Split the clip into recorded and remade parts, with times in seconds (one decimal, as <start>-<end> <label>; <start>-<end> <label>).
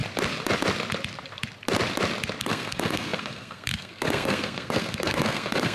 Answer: 0.0-2.4 recorded; 2.4-5.7 remade